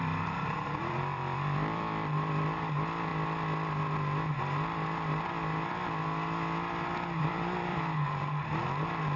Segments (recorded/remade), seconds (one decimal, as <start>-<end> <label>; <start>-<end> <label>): 0.0-3.1 remade; 3.1-7.2 recorded; 7.2-8.6 remade; 8.6-9.2 recorded